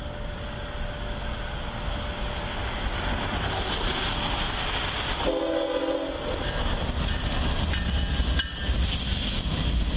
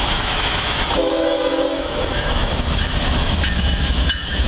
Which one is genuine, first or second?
first